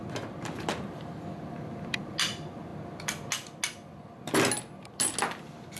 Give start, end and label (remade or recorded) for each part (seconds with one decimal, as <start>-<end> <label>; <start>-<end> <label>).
0.0-5.8 recorded